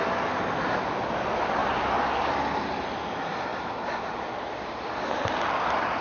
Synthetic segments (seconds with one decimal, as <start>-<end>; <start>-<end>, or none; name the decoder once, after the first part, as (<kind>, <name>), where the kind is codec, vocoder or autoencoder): none